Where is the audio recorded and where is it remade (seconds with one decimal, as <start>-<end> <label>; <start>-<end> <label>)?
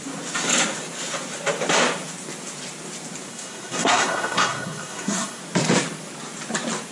0.0-3.3 recorded; 3.3-5.4 remade; 5.4-6.9 recorded